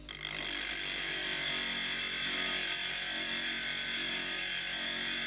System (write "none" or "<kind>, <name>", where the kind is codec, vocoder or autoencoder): none